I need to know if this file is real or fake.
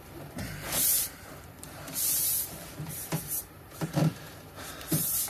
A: fake